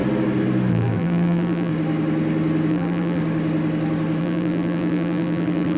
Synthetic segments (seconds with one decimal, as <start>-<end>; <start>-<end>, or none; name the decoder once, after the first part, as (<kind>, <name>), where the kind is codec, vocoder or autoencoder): 0.7-1.7 (vocoder, BigVGAN v2); 2.7-3.2; 4.2-5.8